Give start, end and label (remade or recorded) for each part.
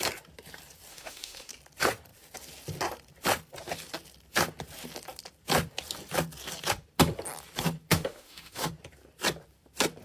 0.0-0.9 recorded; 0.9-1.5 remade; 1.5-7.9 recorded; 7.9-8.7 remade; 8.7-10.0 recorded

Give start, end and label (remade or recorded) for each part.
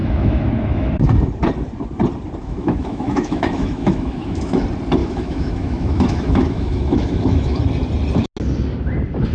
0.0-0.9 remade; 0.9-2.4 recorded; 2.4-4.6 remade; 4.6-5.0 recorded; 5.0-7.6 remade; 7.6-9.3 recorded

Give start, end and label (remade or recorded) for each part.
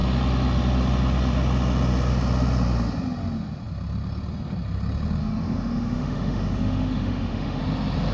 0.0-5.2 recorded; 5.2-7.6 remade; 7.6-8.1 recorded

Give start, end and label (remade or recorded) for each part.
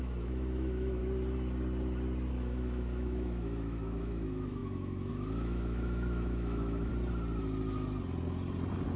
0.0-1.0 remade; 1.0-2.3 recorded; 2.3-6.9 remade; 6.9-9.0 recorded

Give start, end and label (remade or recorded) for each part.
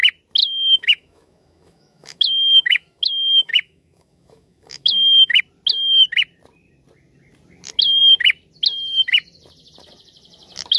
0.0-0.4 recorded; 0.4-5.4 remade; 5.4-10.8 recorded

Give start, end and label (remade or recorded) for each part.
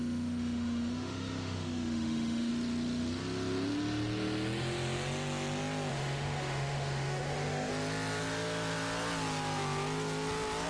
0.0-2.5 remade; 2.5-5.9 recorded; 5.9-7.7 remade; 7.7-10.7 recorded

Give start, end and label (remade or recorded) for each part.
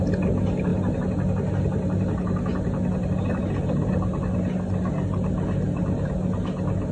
0.0-6.9 recorded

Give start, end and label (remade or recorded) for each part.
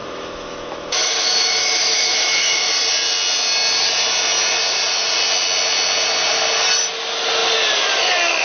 0.0-2.7 remade; 2.7-8.4 recorded